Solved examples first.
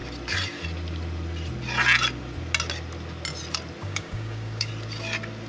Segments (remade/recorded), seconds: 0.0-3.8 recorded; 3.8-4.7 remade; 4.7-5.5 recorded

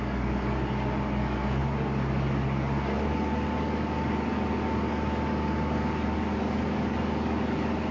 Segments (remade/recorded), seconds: 0.0-7.9 remade

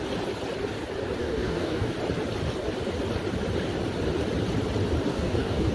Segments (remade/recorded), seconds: 0.0-1.2 recorded; 1.2-1.9 remade; 1.9-5.1 recorded; 5.1-5.7 remade

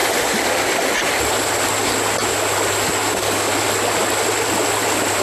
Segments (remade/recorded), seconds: 0.0-3.1 recorded; 3.1-3.5 remade; 3.5-5.2 recorded

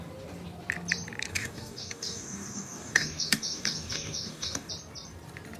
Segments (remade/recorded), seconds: 0.0-1.3 recorded; 1.3-4.7 remade; 4.7-5.6 recorded

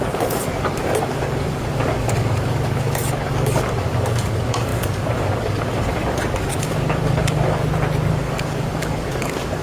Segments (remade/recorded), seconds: 0.0-7.6 remade; 7.6-8.1 recorded; 8.1-9.6 remade